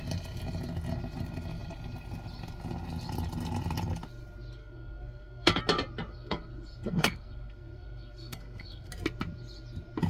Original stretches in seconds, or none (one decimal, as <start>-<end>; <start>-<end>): 0.0-4.6; 5.6-6.1; 8.9-10.1